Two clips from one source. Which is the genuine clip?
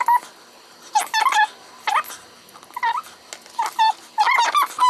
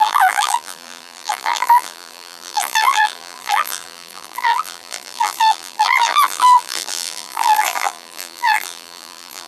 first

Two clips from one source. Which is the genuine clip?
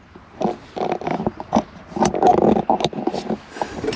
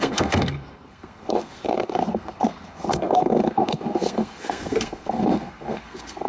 first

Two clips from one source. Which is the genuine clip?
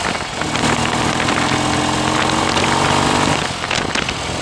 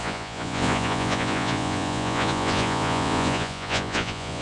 first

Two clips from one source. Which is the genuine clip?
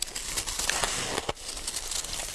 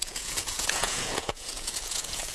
first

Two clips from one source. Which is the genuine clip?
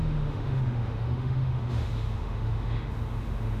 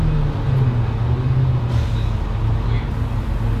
second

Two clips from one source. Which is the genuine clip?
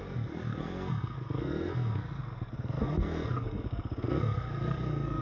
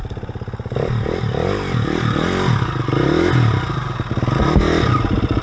second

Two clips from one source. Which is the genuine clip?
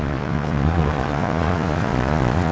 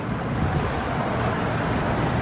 second